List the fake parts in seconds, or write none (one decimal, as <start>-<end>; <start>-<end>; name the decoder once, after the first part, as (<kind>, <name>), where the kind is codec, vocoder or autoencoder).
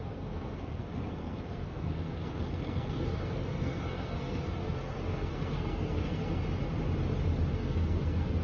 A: 0.0-6.4 (codec, SNAC); 7.5-8.4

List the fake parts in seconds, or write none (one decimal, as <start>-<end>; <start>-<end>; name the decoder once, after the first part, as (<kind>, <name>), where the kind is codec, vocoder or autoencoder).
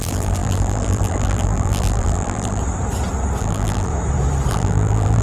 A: 0.0-2.6 (vocoder, BigVGAN v2); 3.4-3.9; 4.5-5.2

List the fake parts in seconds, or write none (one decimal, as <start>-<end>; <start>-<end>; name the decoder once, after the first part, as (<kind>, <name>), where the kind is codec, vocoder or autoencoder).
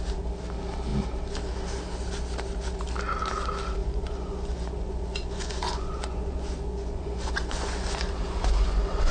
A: 3.8-9.1 (vocoder, Vocos)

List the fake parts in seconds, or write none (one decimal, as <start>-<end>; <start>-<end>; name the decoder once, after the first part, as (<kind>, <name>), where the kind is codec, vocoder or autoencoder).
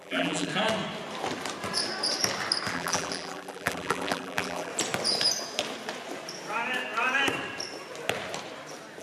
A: 0.0-0.5 (vocoder, BigVGAN v2); 2.7-4.7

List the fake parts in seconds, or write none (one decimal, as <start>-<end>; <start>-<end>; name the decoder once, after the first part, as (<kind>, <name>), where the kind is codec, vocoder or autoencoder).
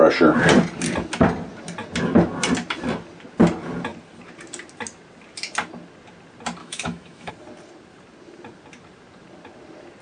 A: 6.6-7.3 (autoencoder, DAC-VAE)